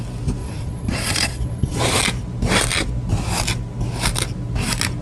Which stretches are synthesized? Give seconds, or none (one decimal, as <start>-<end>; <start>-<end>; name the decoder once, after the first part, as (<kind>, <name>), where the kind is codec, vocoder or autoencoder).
0.4-1.8 (vocoder, Vocos)